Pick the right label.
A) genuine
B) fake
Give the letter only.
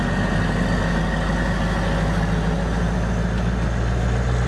A